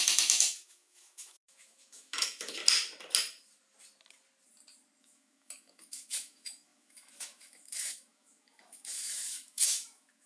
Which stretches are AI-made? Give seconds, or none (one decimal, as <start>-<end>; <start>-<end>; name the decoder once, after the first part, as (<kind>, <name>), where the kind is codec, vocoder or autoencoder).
0.0-2.6 (autoencoder, DAC-VAE); 5.0-10.3